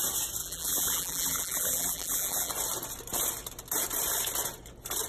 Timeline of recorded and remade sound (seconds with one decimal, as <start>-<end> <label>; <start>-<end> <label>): 0.0-0.4 recorded; 0.4-2.5 remade; 2.5-5.1 recorded